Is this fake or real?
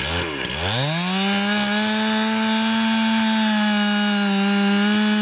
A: real